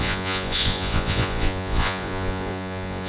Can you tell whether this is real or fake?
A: fake